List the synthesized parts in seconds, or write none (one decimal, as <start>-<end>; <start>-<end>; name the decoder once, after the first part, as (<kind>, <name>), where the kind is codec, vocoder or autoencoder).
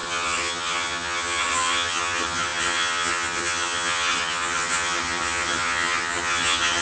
0.0-6.8 (vocoder, HiFi-GAN)